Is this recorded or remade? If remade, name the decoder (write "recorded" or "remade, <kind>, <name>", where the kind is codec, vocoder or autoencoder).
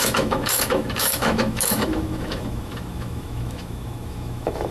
remade, autoencoder, DAC-VAE